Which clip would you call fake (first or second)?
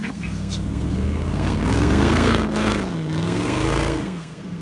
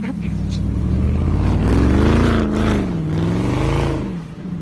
first